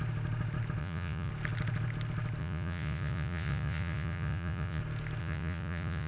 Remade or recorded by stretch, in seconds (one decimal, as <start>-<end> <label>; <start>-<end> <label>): 0.0-0.8 recorded; 0.8-1.3 remade; 1.3-2.4 recorded; 2.4-4.8 remade; 4.8-5.2 recorded; 5.2-6.1 remade